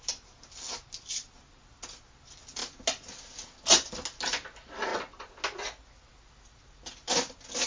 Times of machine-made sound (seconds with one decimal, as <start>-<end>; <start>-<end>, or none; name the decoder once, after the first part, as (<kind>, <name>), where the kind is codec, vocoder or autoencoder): none